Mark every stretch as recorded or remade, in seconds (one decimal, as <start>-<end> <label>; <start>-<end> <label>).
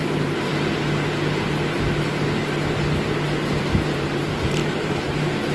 0.0-0.5 remade; 0.5-3.6 recorded; 3.6-5.5 remade